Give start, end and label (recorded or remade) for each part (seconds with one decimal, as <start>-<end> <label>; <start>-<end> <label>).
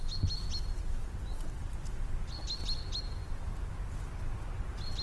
0.0-5.0 recorded